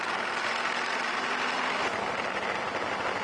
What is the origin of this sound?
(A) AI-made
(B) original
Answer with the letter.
B